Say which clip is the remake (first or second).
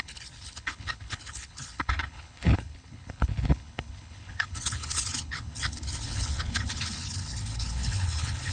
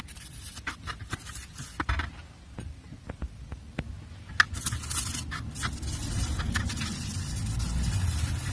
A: first